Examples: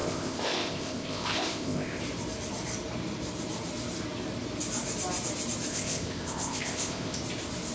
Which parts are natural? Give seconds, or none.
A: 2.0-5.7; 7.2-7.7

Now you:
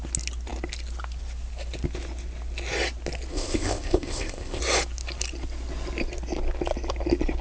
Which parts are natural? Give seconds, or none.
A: 0.0-3.3; 4.6-7.4

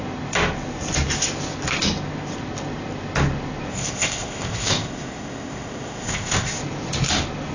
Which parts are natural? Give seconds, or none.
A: 0.0-3.7; 6.6-7.5

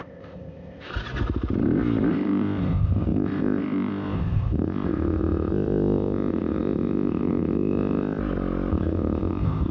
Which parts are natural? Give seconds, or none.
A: 0.9-2.1; 8.2-8.7

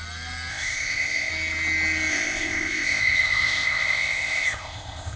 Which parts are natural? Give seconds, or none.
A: 0.0-0.5; 1.3-2.1